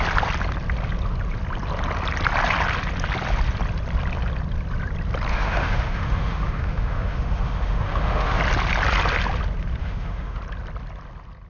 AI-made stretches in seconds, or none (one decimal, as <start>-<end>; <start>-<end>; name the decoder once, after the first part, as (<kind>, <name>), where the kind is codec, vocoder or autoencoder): 5.3-8.4 (autoencoder, DAC-VAE); 9.8-10.4